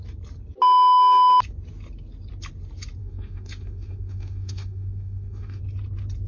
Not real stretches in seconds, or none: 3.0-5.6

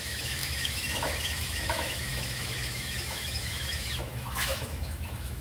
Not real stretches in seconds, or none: 0.0-5.4